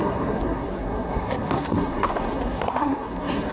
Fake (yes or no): yes